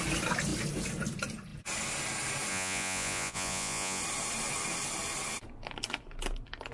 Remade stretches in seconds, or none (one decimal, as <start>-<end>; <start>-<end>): 2.5-4.0